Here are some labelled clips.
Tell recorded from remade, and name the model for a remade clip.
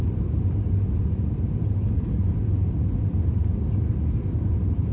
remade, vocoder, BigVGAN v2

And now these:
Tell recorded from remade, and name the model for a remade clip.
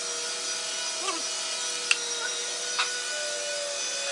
recorded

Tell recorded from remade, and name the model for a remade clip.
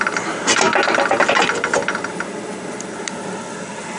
recorded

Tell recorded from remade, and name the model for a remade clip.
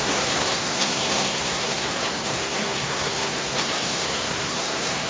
remade, codec, SNAC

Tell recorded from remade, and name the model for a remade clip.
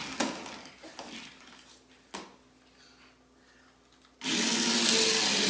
recorded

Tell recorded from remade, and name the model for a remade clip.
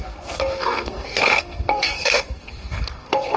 remade, codec, SNAC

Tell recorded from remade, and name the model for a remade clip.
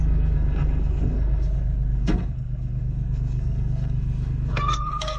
remade, codec, SNAC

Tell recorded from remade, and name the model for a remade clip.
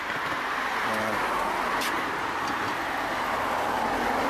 recorded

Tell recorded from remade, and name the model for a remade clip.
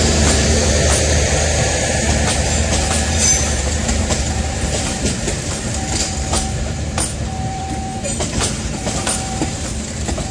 remade, vocoder, BigVGAN v2